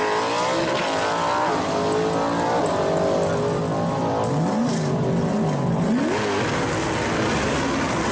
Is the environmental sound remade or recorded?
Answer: recorded